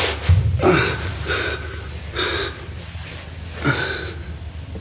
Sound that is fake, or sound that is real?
real